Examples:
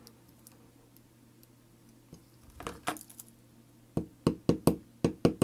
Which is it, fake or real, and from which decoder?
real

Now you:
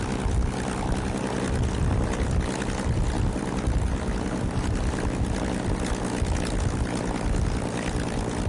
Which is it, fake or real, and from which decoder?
real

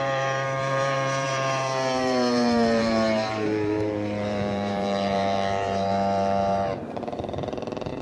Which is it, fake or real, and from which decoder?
fake, vocoder, BigVGAN v2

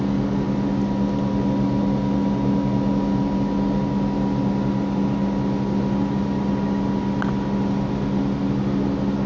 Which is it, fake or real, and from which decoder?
real